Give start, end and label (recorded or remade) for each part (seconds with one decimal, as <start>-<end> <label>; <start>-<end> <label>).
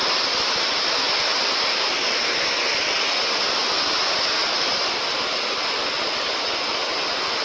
0.0-7.4 recorded